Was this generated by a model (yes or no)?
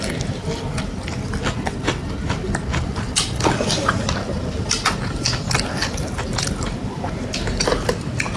no